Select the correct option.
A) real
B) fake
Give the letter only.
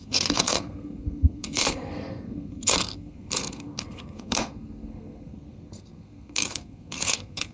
B